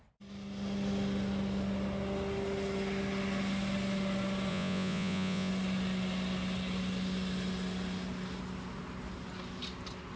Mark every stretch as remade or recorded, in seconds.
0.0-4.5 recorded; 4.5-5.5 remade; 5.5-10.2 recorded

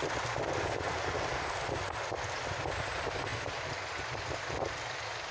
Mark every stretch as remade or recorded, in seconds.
0.0-5.3 recorded

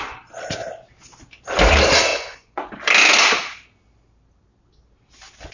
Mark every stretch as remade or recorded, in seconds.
0.0-2.1 recorded; 2.1-2.7 remade; 2.7-5.5 recorded

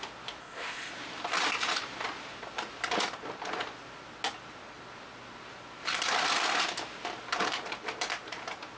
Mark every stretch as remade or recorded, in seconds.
0.0-0.4 recorded; 0.4-0.9 remade; 0.9-8.8 recorded